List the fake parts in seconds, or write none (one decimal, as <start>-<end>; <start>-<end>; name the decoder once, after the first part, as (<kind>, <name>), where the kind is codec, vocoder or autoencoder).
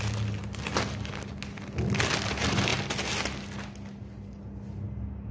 none